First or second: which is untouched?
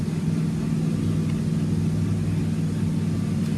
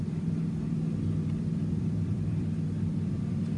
first